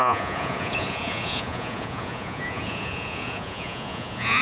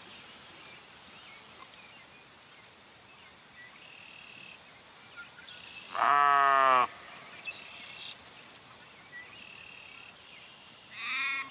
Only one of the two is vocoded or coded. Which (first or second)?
first